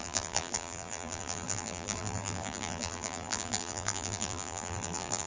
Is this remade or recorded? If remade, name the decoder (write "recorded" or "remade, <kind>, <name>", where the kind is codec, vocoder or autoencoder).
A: remade, vocoder, BigVGAN v2